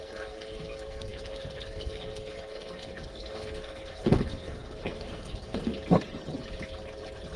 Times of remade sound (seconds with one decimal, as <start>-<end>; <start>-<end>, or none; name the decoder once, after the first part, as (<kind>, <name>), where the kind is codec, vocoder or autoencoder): 0.0-5.7 (codec, SNAC)